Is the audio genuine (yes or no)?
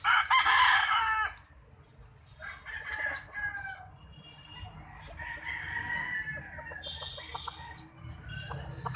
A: yes